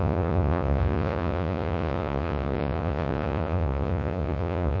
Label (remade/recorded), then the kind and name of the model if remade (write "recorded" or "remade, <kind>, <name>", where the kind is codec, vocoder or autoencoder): remade, vocoder, Vocos